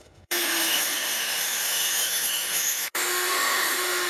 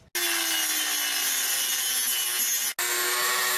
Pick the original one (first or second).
second